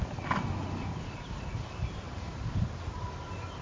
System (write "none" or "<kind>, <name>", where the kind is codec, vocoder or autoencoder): none